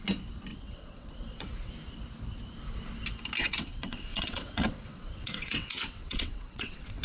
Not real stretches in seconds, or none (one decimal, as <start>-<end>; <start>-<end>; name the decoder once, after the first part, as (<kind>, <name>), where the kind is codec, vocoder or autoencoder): 0.5-1.7 (vocoder, WaveNeXt); 3.4-7.0